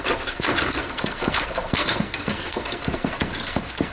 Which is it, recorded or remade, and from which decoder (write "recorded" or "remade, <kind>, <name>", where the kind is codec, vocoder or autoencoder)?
remade, codec, SNAC